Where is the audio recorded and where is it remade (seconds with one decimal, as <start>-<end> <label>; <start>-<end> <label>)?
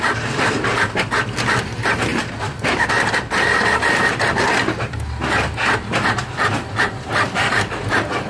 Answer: 0.0-8.3 recorded